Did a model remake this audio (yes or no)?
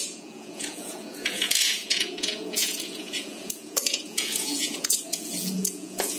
yes